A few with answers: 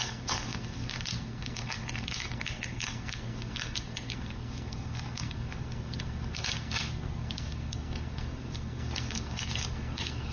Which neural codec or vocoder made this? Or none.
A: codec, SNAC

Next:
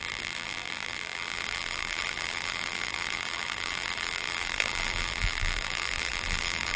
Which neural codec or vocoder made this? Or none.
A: vocoder, BigVGAN v2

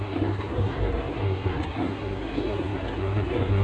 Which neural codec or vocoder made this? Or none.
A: codec, SNAC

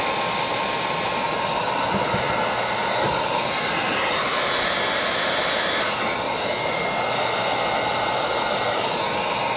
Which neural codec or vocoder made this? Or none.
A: none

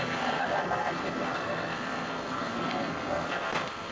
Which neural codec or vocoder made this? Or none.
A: codec, SNAC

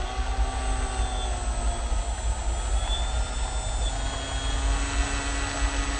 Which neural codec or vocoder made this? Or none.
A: none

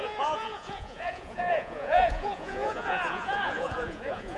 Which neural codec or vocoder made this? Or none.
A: vocoder, Vocos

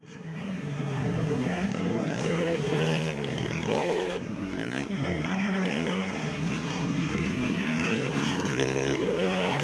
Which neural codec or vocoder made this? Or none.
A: codec, SNAC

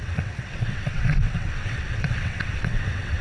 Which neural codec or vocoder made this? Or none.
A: vocoder, WaveNeXt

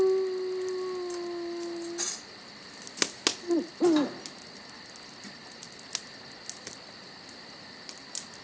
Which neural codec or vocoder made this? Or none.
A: none